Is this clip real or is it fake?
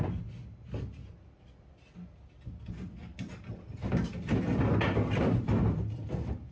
real